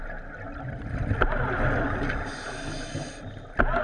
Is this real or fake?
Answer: real